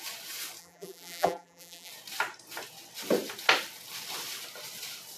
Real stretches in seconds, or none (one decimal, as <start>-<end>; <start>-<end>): 0.0-0.6; 1.9-5.2